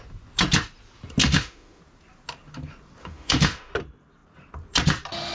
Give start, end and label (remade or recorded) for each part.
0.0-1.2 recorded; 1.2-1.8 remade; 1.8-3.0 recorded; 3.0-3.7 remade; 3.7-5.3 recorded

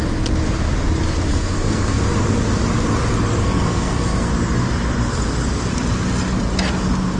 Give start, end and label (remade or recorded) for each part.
0.0-1.3 recorded; 1.3-2.0 remade; 2.0-3.4 recorded; 3.4-4.3 remade; 4.3-7.2 recorded